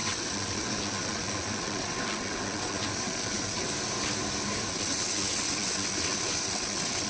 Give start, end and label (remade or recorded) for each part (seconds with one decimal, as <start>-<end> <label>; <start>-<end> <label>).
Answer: 0.0-3.7 remade; 3.7-4.7 recorded; 4.7-7.1 remade